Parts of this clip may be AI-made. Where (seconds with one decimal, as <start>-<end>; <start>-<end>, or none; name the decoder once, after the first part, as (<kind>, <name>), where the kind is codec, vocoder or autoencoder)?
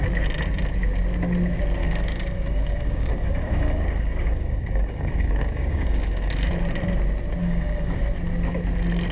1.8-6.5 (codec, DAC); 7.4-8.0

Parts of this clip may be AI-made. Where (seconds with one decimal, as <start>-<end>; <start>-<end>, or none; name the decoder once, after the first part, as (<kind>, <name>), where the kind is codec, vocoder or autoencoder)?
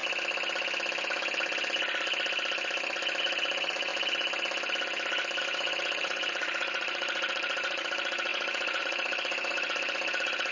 3.2-3.9 (vocoder, Vocos); 5.4-10.5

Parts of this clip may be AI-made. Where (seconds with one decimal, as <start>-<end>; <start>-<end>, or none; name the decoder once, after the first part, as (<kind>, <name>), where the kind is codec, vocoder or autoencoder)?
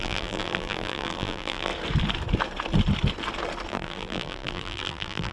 0.0-1.7 (vocoder, BigVGAN v2); 3.7-5.3